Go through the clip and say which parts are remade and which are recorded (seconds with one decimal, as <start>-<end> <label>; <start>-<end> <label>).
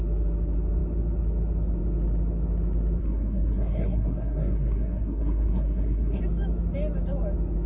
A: 0.0-3.0 recorded; 3.0-6.2 remade; 6.2-7.7 recorded